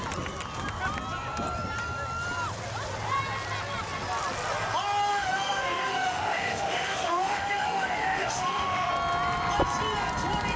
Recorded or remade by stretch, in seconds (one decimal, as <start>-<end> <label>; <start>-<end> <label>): 0.0-5.1 recorded; 5.1-8.9 remade; 8.9-10.6 recorded

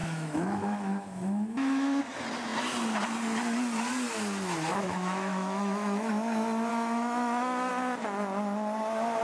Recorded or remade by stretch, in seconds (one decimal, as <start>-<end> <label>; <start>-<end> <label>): 0.0-2.0 remade; 2.0-4.7 recorded; 4.7-6.1 remade; 6.1-6.7 recorded; 6.7-7.7 remade; 7.7-9.2 recorded

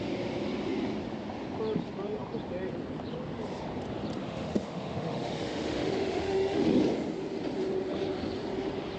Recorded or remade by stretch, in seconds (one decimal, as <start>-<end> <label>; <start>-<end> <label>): 0.0-4.2 recorded; 4.2-6.8 remade; 6.8-9.0 recorded